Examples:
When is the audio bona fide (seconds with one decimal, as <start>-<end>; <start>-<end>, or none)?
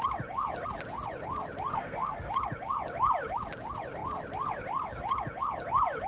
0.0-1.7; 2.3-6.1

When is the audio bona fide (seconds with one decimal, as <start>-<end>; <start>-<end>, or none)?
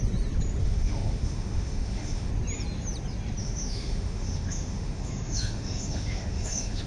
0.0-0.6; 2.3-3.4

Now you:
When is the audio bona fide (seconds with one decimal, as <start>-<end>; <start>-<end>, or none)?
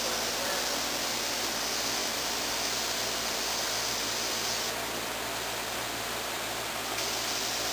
0.0-2.0; 2.6-7.7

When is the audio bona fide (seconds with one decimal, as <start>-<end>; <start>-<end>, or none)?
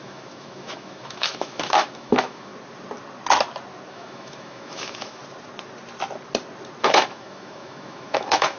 2.5-3.9; 5.2-6.8